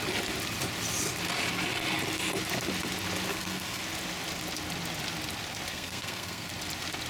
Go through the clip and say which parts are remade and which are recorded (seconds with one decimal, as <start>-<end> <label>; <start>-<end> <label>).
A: 0.0-3.3 recorded; 3.3-3.8 remade; 3.8-5.7 recorded; 5.7-6.5 remade; 6.5-7.1 recorded